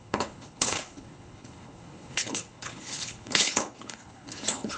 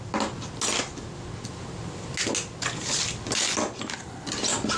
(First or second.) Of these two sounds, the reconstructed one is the first